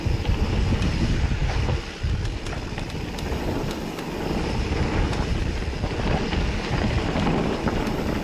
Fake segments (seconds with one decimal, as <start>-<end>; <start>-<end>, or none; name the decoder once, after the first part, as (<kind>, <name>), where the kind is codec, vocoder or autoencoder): none